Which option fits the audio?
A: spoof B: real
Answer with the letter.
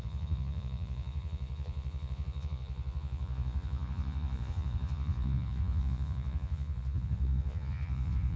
A